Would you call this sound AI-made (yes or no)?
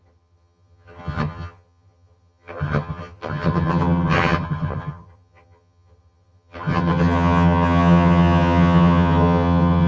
yes